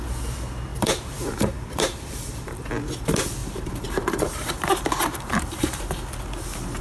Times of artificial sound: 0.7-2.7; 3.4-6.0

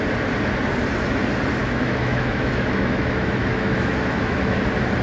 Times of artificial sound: 1.6-4.6

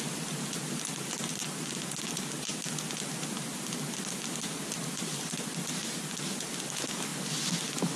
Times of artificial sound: none

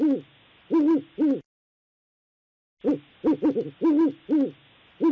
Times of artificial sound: none

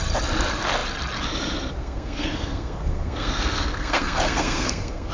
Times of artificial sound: 1.8-5.1

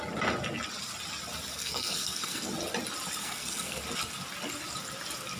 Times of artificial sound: 1.5-2.5; 3.2-3.8